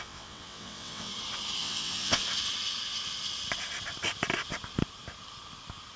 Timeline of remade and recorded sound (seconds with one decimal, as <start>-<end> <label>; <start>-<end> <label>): 0.0-1.1 remade; 1.1-1.6 recorded; 1.6-2.2 remade; 2.2-6.0 recorded